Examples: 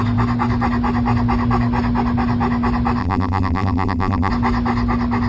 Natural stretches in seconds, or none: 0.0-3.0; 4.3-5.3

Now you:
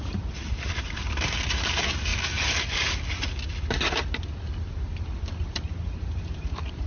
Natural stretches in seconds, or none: 2.1-6.2

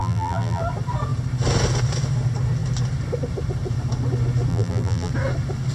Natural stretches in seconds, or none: 0.6-4.5; 5.1-5.7

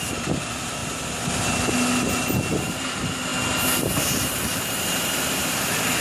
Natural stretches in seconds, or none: 0.8-2.6; 3.3-4.0

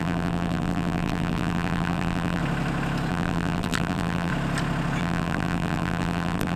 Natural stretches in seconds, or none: 2.4-3.1; 4.3-5.0